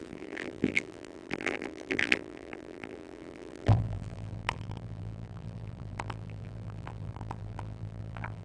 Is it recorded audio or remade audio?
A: remade